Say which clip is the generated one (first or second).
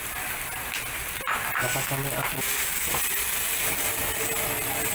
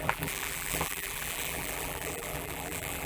second